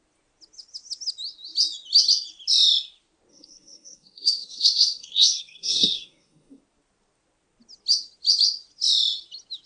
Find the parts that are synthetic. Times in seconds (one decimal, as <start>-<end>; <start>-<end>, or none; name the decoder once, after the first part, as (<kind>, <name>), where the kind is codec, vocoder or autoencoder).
3.3-6.6 (codec, SNAC)